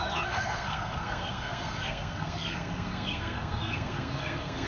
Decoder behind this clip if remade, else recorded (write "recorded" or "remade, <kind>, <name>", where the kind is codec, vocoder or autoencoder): remade, codec, SNAC